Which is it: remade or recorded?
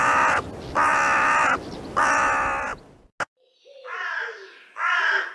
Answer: recorded